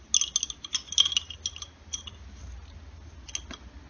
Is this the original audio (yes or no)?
yes